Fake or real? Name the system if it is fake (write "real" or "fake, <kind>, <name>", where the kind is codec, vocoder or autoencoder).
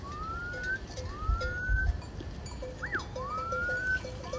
real